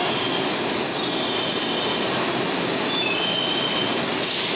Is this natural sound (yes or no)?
yes